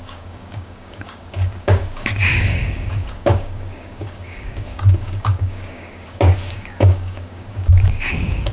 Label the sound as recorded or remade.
remade